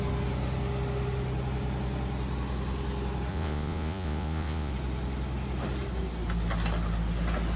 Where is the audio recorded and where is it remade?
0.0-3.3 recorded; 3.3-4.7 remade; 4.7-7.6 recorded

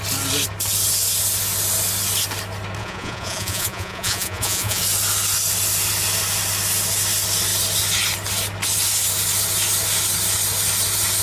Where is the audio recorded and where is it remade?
0.0-2.8 recorded; 2.8-4.8 remade; 4.8-11.2 recorded

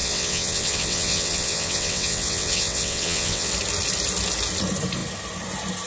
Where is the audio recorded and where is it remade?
0.0-3.5 remade; 3.5-5.9 recorded